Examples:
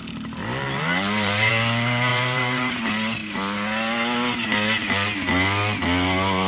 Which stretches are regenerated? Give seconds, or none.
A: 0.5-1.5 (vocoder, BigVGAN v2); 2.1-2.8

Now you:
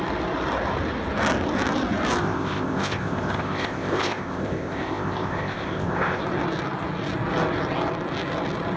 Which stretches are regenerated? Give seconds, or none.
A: 2.2-6.2 (codec, ZipCodec)

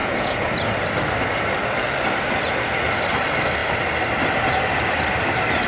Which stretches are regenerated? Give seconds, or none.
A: 0.0-0.5 (vocoder, Vocos)

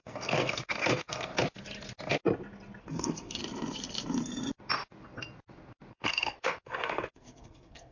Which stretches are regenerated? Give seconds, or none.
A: 0.0-1.3 (codec, SNAC); 2.8-3.4; 5.9-7.9